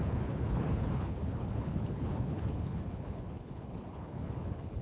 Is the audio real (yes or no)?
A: no